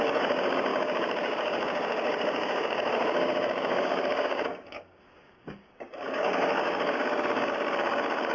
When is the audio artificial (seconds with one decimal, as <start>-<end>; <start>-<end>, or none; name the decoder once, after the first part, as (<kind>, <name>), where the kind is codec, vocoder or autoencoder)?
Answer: 0.0-8.3 (codec, DAC)